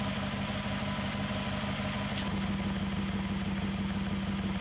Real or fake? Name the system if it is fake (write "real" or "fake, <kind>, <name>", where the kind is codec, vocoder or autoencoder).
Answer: real